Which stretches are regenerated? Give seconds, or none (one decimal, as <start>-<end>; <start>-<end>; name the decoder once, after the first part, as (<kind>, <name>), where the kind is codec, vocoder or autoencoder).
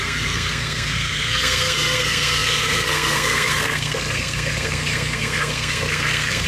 0.0-6.5 (codec, SNAC)